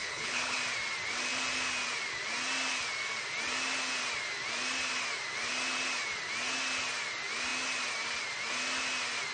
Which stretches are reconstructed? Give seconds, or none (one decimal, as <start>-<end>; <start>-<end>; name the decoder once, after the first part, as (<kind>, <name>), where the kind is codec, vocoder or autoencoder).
0.0-0.6 (codec, HILCodec)